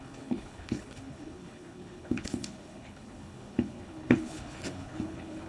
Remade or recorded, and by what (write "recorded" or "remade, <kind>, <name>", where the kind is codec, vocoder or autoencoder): remade, codec, HILCodec